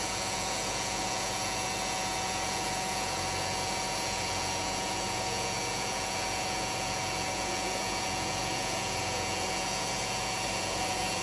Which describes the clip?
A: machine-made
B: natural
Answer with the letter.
A